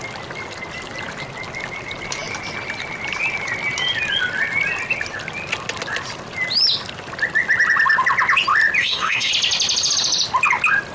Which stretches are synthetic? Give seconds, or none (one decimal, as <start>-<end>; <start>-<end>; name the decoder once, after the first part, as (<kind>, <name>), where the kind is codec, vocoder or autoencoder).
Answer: 8.8-9.3 (codec, SNAC)